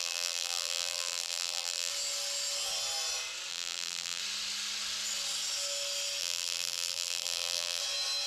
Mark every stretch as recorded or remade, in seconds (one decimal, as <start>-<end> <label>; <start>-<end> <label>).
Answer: 0.0-1.9 remade; 1.9-3.5 recorded; 3.5-4.2 remade; 4.2-6.2 recorded; 6.2-7.8 remade; 7.8-8.3 recorded